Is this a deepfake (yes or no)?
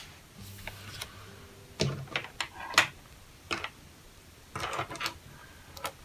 no